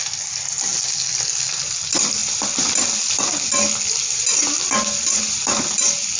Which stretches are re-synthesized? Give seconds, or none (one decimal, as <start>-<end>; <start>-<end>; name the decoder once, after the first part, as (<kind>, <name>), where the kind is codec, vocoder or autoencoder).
none